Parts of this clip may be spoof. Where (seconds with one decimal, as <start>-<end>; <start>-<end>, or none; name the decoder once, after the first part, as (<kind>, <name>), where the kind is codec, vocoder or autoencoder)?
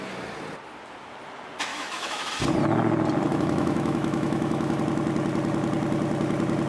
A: 1.7-2.3 (autoencoder, DAC-VAE); 3.3-4.8